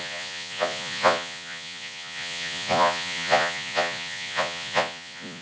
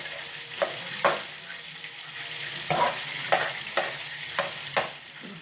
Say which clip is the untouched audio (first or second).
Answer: second